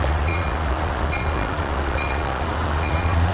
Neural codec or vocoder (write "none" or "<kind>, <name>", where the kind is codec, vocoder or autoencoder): vocoder, Vocos